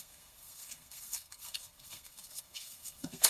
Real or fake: fake